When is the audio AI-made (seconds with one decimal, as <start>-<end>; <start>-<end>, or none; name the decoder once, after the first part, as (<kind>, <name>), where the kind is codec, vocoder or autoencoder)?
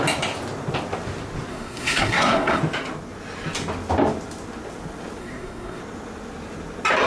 1.5-2.6 (codec, SNAC); 5.2-5.8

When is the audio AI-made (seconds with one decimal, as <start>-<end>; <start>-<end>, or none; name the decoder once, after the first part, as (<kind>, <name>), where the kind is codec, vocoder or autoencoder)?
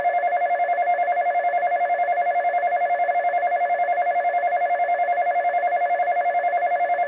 none